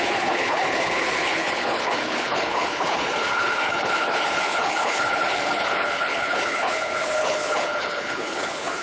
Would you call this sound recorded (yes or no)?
no